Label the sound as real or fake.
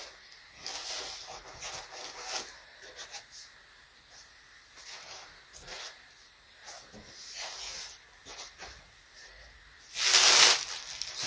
real